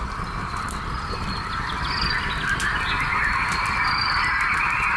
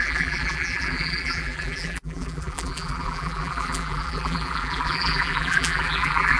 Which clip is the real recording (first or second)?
first